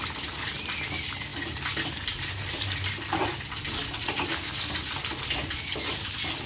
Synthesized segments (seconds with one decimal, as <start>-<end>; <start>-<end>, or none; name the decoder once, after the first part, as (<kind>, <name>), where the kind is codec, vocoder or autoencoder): none